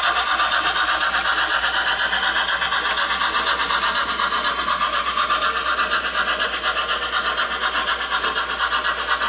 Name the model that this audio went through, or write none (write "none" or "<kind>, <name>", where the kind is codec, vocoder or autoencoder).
none